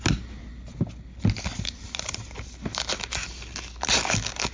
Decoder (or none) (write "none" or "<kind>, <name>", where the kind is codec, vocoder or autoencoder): none